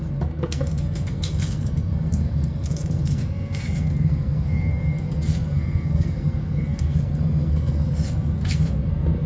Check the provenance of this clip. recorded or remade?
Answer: remade